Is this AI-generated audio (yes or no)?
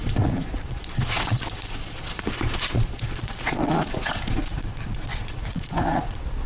yes